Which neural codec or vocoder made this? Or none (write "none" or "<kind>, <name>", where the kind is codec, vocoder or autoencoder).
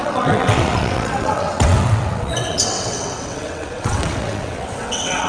vocoder, WaveNeXt